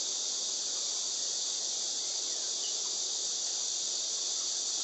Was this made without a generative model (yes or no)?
yes